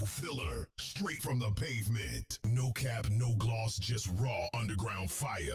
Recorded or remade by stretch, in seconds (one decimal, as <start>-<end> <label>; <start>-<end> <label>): 0.0-1.2 remade; 1.2-5.5 recorded